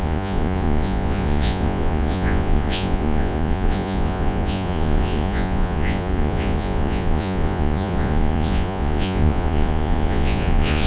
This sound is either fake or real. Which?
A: fake